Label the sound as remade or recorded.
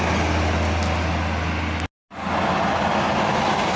recorded